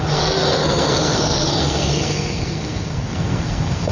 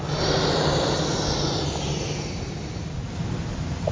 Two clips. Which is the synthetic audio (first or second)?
first